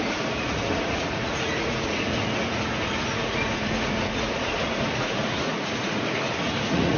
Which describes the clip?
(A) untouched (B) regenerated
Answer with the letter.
B